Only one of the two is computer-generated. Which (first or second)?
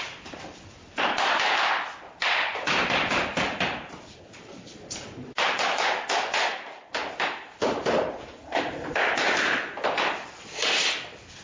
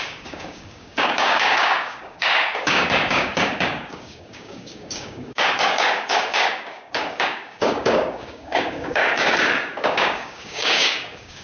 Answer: second